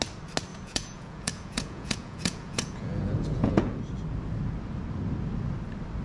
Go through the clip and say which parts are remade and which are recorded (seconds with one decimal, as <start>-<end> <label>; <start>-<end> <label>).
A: 0.0-0.5 recorded; 0.5-3.8 remade; 3.8-6.0 recorded